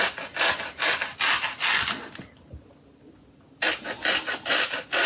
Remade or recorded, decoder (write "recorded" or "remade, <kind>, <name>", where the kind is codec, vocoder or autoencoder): recorded